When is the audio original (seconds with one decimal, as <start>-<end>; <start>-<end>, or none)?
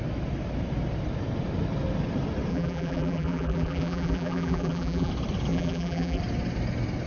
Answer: 0.0-2.5; 5.1-5.5; 6.2-7.1